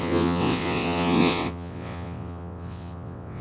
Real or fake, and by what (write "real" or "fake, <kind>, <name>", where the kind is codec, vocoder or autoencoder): fake, vocoder, WaveNeXt